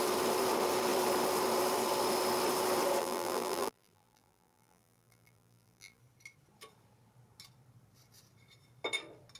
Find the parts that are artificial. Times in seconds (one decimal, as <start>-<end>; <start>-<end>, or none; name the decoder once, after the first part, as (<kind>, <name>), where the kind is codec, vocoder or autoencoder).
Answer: 3.0-6.0 (vocoder, BigVGAN v2)